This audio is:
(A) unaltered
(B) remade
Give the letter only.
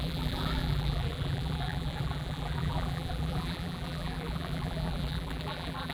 B